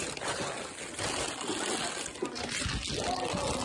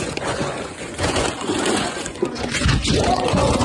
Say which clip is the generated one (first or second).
second